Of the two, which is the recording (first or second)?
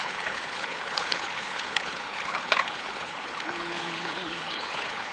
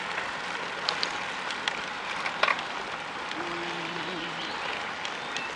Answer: second